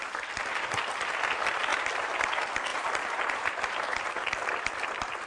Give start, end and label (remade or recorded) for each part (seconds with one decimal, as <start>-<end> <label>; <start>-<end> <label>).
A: 0.0-2.7 recorded; 2.7-3.9 remade; 3.9-5.3 recorded